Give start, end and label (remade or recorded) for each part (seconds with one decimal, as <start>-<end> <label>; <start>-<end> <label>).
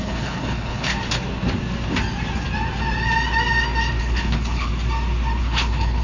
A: 0.0-0.9 remade; 0.9-4.0 recorded; 4.0-4.7 remade; 4.7-5.4 recorded; 5.4-6.0 remade